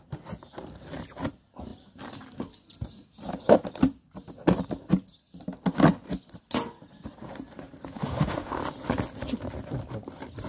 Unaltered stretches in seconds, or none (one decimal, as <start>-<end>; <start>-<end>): 0.0-8.0; 8.6-10.5

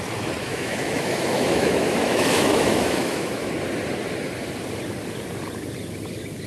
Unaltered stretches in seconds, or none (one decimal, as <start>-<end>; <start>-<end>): 0.0-0.4; 3.5-6.5